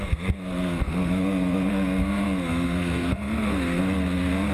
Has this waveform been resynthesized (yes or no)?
yes